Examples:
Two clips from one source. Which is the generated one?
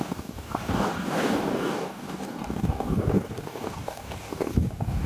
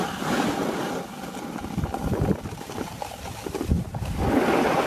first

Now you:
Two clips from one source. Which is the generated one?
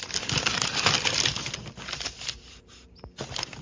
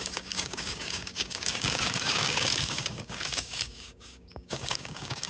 second